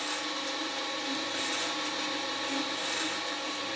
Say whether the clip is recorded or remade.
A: recorded